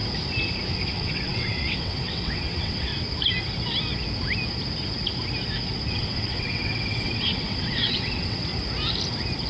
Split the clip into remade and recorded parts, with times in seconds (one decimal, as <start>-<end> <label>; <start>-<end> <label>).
0.0-0.9 recorded; 0.9-2.9 remade; 2.9-5.9 recorded; 5.9-8.5 remade; 8.5-9.5 recorded